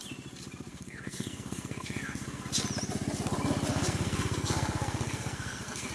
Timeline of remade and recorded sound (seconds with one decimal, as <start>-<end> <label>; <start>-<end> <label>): 0.0-0.7 recorded; 0.7-2.4 remade; 2.4-3.7 recorded; 3.7-5.9 remade